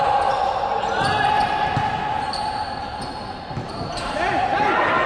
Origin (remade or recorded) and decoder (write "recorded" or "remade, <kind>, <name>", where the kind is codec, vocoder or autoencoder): recorded